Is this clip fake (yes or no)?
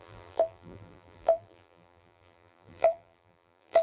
yes